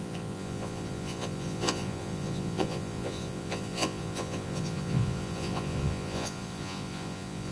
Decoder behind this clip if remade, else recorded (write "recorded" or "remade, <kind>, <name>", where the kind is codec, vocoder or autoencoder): remade, vocoder, Vocos